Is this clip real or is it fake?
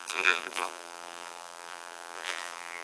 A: fake